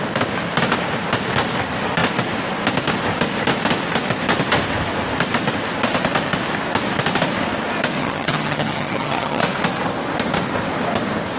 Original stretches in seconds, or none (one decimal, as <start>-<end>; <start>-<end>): 0.0-8.0; 9.4-11.4